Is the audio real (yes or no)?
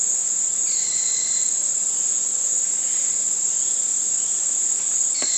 yes